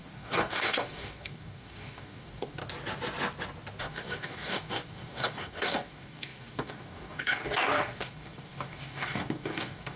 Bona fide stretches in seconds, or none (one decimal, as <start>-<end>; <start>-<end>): 2.6-3.8